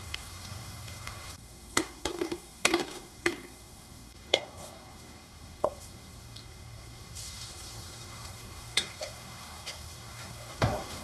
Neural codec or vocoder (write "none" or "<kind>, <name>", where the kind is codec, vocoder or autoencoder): codec, SNAC